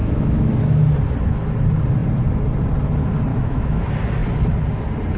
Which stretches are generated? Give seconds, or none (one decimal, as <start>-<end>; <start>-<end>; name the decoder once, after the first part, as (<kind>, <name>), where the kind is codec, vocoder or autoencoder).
0.0-0.5 (autoencoder, DAC-VAE); 3.3-3.8